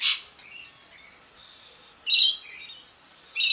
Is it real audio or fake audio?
real